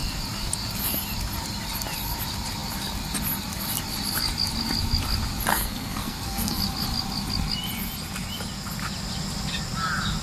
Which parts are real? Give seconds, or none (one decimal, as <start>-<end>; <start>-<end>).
0.0-5.5; 6.6-10.2